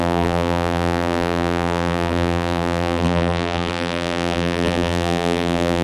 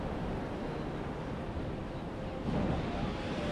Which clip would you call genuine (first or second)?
second